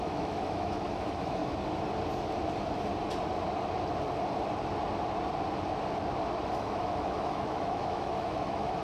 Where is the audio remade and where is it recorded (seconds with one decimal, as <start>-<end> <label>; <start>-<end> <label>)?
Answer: 0.0-1.4 remade; 1.4-6.5 recorded; 6.5-8.8 remade